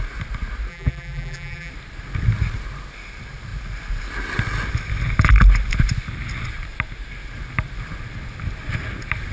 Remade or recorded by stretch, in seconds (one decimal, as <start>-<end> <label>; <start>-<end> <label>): 0.0-0.7 recorded; 0.7-1.7 remade; 1.7-9.3 recorded